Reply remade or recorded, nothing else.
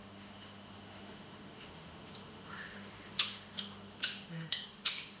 remade